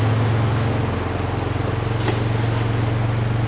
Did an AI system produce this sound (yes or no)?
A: no